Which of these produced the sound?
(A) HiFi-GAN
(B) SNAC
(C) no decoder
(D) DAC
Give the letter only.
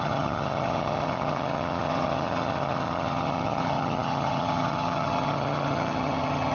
A